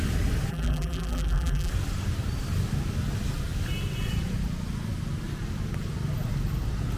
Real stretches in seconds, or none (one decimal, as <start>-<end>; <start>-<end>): 0.0-0.5; 1.7-7.0